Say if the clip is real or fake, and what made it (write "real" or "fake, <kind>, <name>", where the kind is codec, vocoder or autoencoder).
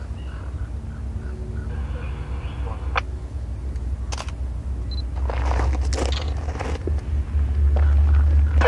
real